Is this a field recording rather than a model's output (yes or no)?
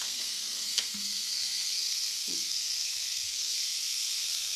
no